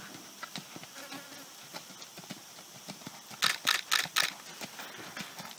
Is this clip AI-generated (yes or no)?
no